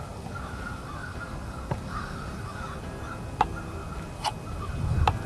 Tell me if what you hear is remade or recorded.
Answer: recorded